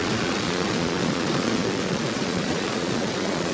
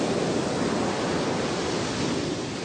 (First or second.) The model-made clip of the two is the first